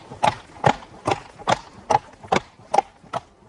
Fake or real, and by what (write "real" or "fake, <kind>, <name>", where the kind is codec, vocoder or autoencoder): real